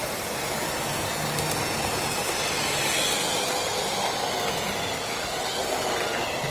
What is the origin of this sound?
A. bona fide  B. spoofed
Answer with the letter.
A